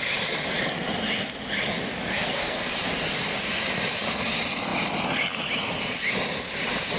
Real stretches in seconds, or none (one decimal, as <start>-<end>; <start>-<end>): 0.0-2.1; 2.7-7.0